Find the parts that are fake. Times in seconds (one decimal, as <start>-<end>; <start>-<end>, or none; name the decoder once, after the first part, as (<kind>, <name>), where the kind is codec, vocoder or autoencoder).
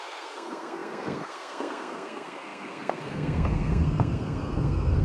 0.0-5.0 (codec, SNAC)